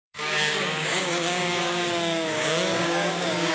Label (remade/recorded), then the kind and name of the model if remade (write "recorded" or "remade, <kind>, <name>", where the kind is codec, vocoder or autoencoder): remade, codec, DAC